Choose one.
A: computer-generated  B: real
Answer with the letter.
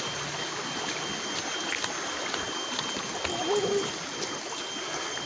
B